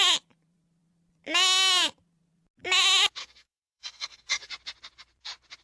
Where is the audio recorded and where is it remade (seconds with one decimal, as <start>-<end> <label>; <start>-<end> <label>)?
0.0-3.2 recorded; 3.2-4.5 remade; 4.5-5.6 recorded